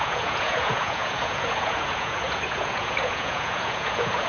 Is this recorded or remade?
remade